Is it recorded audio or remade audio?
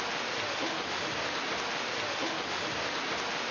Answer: recorded